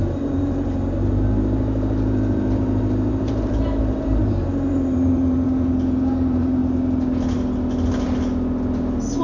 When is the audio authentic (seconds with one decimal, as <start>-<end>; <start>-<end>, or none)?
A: 6.6-9.2